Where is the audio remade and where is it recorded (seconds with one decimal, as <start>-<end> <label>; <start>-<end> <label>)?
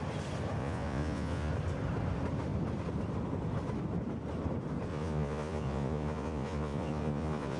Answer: 0.0-0.6 recorded; 0.6-1.5 remade; 1.5-4.9 recorded; 4.9-7.6 remade